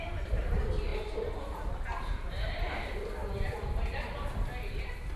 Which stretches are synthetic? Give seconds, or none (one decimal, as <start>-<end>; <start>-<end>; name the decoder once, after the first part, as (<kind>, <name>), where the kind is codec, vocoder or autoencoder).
none